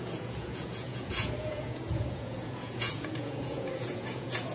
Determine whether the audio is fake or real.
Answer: fake